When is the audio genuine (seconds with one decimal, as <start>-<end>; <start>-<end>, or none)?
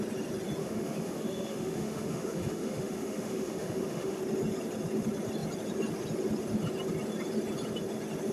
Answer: 0.0-0.6; 4.2-8.3